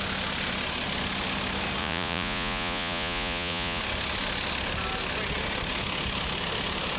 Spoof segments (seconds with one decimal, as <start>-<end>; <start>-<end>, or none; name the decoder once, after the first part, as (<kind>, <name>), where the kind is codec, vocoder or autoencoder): 1.8-3.8 (vocoder, Vocos)